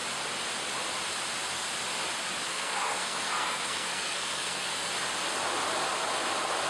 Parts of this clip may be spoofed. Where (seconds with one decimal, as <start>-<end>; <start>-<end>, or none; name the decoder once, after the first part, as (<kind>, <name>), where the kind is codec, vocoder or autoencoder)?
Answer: 2.5-4.9 (codec, SNAC)